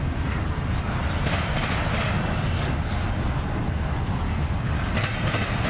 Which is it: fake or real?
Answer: real